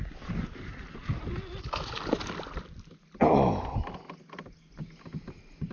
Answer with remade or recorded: recorded